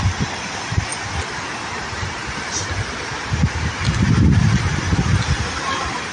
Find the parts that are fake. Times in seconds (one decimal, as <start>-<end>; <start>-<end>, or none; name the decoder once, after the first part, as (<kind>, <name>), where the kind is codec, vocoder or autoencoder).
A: none

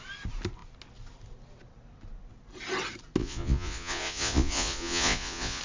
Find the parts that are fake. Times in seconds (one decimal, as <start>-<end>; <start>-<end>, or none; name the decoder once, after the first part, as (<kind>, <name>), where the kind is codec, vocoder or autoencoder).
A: 3.2-5.6 (vocoder, Vocos)